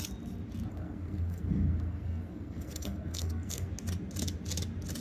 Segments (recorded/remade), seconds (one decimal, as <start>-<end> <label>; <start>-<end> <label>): 0.0-0.7 recorded; 0.7-3.7 remade; 3.7-5.0 recorded